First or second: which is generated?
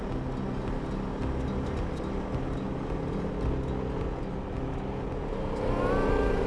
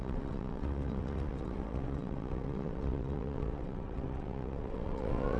second